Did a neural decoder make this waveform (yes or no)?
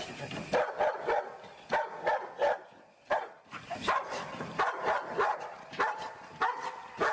no